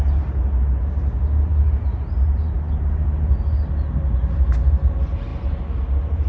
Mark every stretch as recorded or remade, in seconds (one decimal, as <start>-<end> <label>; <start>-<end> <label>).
0.0-6.3 recorded